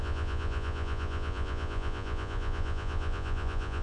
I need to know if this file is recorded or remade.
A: remade